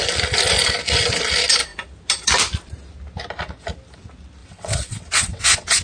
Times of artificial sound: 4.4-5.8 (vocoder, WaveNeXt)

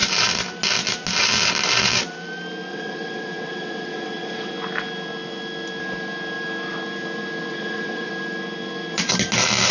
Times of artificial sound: 2.7-4.5 (vocoder, WaveNeXt); 7.5-8.1

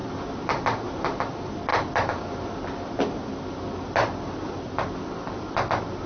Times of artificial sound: none

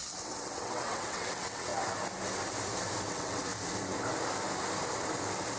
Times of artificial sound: 0.0-1.7 (vocoder, WaveNeXt); 3.1-3.5